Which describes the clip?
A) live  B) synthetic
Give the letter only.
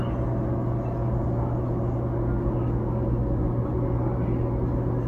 A